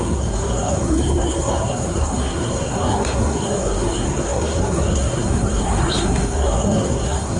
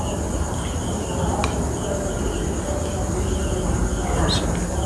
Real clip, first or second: second